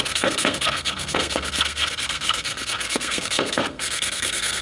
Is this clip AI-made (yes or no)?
yes